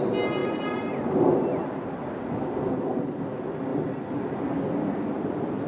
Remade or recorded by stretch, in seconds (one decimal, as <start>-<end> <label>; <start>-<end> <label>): 0.0-5.7 recorded